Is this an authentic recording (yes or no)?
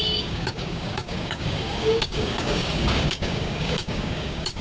no